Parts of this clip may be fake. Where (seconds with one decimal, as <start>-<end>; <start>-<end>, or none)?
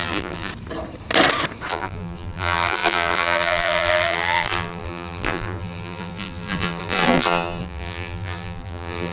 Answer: 0.0-0.5; 1.7-9.1